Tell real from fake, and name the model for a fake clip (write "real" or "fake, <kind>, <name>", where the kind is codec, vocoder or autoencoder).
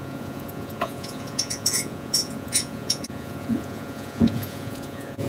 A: fake, vocoder, Vocos